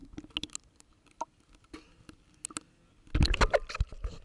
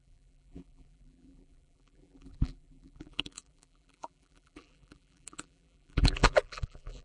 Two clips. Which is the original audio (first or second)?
first